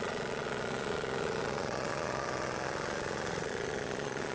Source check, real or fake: fake